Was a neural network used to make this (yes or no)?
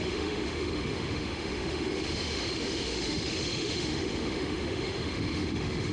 yes